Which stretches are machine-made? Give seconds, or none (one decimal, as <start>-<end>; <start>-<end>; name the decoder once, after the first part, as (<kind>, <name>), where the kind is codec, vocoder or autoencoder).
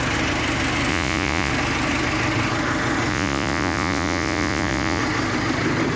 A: 0.9-1.5 (vocoder, Vocos); 3.1-5.0